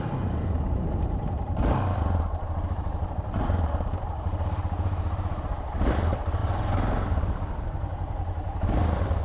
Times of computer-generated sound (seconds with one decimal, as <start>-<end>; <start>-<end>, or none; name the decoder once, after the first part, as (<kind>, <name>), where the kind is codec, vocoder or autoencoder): 0.0-9.2 (vocoder, BigVGAN v2)